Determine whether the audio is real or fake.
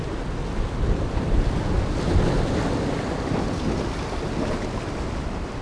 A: real